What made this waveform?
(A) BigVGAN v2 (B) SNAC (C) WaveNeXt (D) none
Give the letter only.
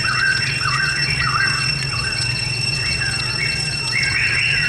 C